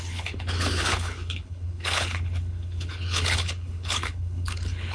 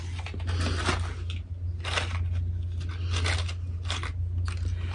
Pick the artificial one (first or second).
first